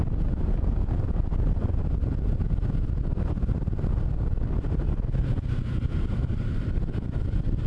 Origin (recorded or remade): recorded